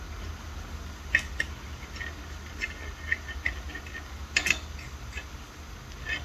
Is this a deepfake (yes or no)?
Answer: no